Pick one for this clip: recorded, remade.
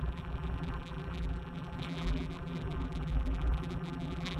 remade